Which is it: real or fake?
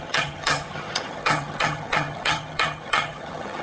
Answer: fake